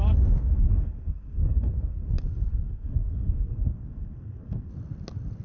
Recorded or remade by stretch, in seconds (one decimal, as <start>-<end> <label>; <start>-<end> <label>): 0.0-0.4 recorded; 0.4-2.1 remade; 2.1-2.5 recorded; 2.5-4.7 remade; 4.7-5.4 recorded